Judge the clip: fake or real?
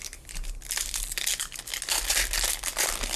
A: real